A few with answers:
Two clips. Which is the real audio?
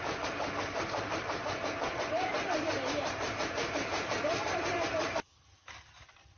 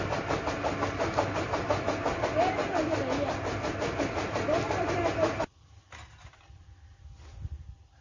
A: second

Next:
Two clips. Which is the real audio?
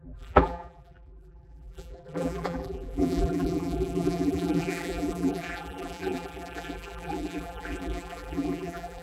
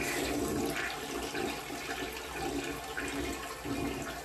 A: second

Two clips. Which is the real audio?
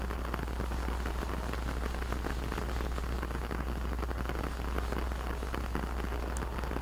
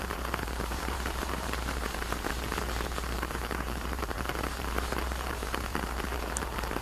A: first